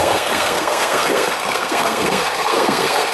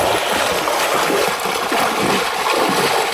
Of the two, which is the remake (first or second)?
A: first